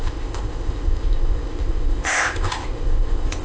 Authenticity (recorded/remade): remade